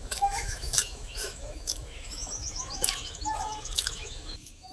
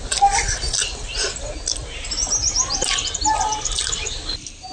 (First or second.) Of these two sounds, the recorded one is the second